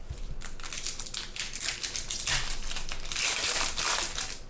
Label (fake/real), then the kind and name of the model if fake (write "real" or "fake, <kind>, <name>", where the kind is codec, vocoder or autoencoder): real